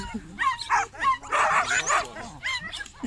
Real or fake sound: real